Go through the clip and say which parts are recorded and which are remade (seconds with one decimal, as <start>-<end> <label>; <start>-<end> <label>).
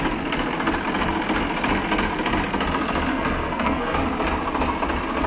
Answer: 0.0-3.1 recorded; 3.1-4.0 remade; 4.0-5.3 recorded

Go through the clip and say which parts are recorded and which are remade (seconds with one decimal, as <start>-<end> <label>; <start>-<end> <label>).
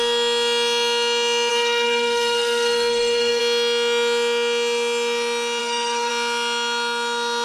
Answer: 0.0-1.5 recorded; 1.5-3.4 remade; 3.4-5.6 recorded; 5.6-6.1 remade; 6.1-7.4 recorded